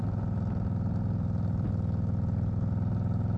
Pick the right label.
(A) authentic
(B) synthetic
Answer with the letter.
A